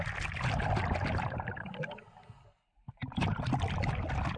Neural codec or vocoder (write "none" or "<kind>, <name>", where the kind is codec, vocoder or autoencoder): none